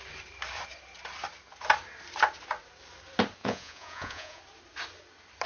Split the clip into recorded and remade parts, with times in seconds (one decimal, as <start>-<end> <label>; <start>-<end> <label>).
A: 0.0-3.4 recorded; 3.4-4.4 remade; 4.4-5.5 recorded

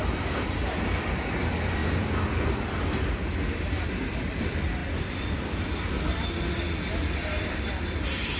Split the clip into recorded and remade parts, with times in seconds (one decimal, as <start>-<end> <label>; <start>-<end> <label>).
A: 0.0-8.4 recorded

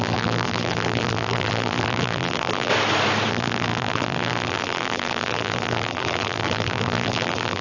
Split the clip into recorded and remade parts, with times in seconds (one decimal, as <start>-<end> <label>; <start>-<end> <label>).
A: 0.0-2.7 remade; 2.7-3.3 recorded; 3.3-7.6 remade